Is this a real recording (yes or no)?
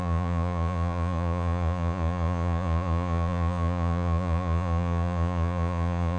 no